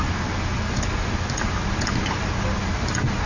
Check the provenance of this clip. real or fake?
real